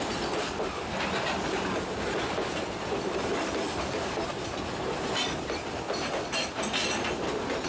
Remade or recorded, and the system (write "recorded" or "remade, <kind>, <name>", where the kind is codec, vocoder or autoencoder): recorded